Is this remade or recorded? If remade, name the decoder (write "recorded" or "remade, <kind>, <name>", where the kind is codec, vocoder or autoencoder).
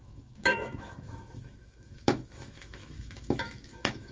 remade, autoencoder, DAC-VAE